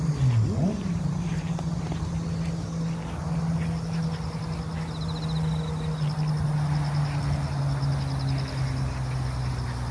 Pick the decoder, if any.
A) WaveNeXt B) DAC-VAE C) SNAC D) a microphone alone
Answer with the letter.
D